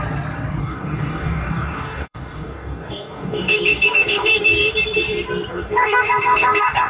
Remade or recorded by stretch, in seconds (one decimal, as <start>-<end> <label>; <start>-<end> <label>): 0.0-0.6 recorded; 0.6-4.7 remade; 4.7-5.5 recorded; 5.5-6.9 remade